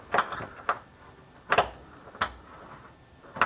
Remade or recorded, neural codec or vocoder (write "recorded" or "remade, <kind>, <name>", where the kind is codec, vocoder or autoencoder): recorded